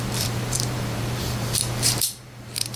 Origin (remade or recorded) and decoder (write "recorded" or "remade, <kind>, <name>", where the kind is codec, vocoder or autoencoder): remade, vocoder, BigVGAN v2